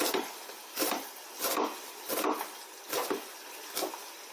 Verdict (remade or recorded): recorded